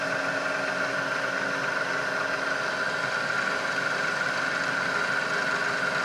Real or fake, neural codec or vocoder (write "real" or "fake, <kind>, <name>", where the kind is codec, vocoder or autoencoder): real